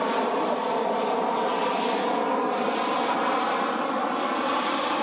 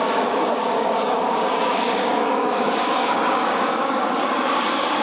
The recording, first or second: first